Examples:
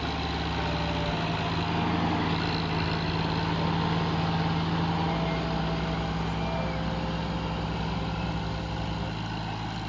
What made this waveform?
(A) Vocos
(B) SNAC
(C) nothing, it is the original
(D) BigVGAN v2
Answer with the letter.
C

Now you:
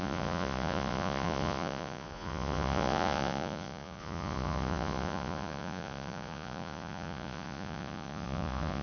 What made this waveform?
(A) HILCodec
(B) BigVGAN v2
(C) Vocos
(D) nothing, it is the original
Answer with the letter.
C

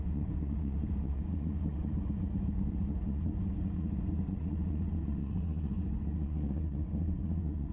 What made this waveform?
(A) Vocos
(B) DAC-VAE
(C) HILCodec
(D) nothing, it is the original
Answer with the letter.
A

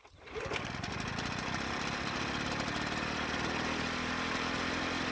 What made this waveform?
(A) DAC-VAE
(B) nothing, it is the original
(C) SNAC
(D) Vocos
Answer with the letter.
B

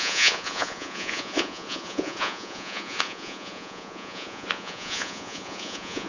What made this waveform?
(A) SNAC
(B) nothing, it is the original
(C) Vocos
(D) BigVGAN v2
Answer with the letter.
C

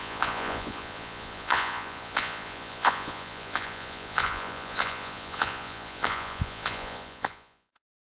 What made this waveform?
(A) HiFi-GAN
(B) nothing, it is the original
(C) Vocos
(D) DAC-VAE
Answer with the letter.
C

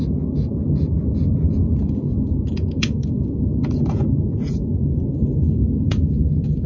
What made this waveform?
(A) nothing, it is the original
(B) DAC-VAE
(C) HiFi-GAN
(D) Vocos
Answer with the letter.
D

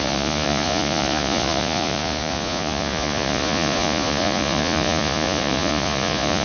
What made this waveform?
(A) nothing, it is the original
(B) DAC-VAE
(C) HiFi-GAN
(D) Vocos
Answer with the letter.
D